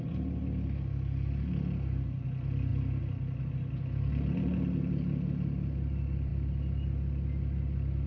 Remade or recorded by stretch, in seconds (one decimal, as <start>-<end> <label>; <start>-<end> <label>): 0.0-8.1 recorded